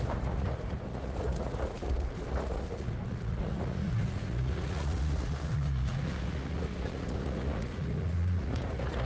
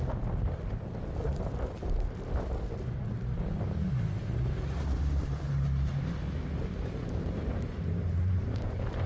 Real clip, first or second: second